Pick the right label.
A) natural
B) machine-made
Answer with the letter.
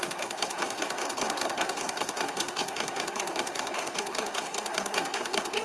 B